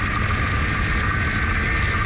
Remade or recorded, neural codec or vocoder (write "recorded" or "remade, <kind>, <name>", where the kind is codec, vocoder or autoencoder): recorded